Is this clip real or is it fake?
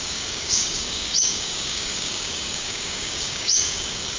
fake